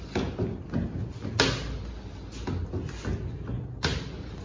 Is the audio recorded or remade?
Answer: recorded